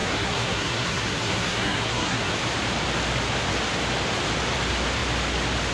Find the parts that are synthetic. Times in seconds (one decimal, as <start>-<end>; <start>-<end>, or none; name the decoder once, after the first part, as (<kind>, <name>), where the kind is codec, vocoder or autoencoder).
0.0-2.3 (codec, SNAC)